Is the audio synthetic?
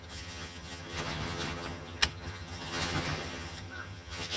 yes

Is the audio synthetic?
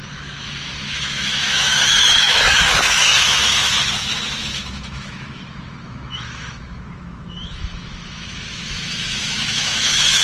yes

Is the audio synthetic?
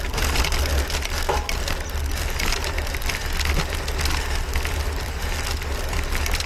no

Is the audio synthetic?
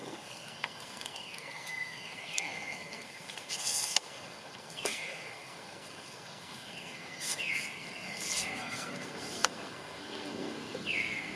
yes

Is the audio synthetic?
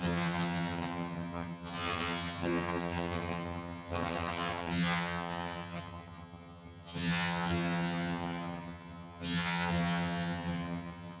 yes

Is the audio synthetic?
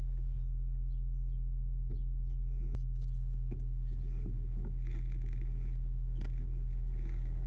no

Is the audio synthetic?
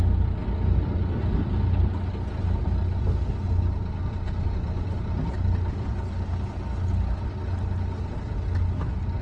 no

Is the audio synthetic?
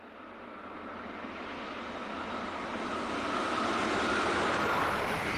no